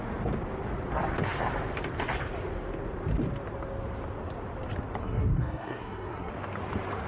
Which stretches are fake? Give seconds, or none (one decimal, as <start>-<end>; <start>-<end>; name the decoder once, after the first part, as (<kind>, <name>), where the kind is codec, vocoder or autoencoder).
5.0-6.3 (codec, SNAC)